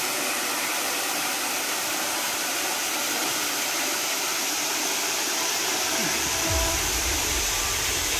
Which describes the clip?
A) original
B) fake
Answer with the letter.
B